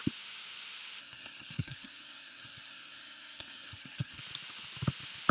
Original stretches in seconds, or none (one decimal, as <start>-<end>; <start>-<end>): 0.0-1.0; 4.2-5.3